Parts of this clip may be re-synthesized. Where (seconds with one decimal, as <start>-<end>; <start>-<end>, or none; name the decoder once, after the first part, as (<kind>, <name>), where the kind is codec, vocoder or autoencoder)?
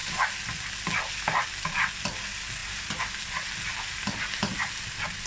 none